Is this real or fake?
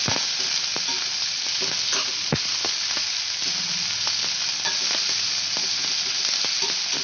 real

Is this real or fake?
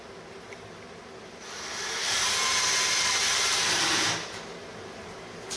real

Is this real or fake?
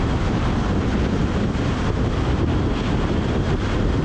fake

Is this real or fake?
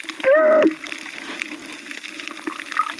real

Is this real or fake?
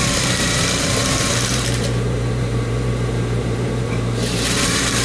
fake